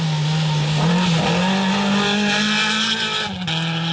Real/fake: real